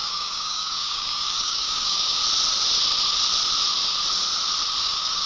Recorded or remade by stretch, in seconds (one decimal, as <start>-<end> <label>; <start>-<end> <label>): 0.0-2.2 remade; 2.2-4.8 recorded; 4.8-5.3 remade